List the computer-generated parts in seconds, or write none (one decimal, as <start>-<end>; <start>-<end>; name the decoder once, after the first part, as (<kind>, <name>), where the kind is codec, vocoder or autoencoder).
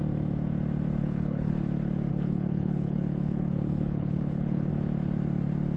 1.0-1.5 (codec, HILCodec); 2.1-4.7